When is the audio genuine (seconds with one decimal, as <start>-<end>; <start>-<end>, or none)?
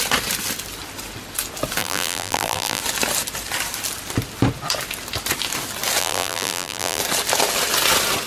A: 0.0-1.8; 2.8-6.0; 7.0-8.3